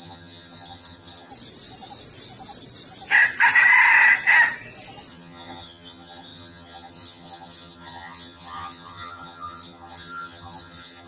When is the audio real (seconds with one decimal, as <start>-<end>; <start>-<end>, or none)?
1.3-5.1